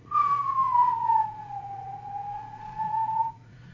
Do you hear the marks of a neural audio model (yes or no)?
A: yes